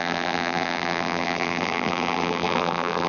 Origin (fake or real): fake